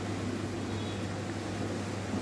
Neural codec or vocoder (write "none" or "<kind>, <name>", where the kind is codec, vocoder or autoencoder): none